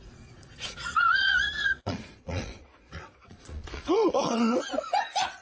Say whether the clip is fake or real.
fake